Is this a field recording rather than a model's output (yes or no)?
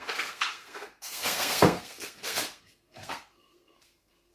no